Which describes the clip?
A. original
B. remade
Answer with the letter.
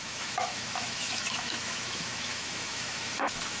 B